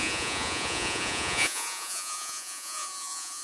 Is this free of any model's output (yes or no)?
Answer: no